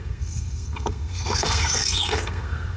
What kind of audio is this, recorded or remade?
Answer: remade